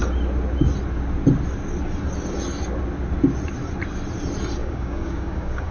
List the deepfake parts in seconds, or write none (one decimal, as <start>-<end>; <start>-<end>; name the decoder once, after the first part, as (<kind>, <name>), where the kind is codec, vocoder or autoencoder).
4.6-5.7 (codec, DAC)